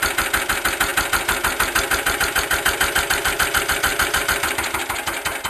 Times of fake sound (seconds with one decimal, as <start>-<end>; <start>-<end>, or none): 3.9-4.8